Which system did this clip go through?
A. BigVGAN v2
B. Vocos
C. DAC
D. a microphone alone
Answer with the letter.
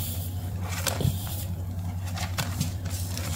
A